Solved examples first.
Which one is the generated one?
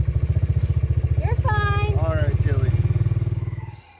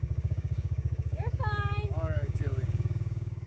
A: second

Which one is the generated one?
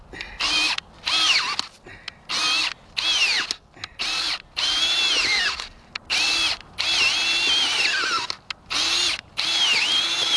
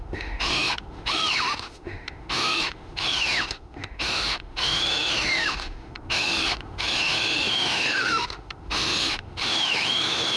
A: second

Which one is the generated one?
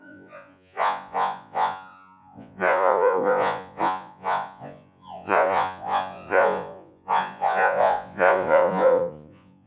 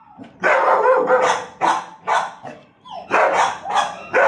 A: first